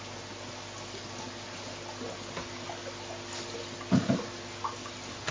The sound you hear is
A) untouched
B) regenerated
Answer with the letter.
A